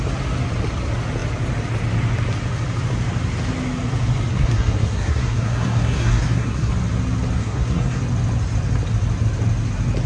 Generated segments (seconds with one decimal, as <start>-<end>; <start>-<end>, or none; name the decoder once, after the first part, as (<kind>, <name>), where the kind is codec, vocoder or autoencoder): 4.3-6.7 (codec, SNAC); 7.4-8.0